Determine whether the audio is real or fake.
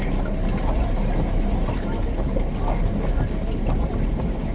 real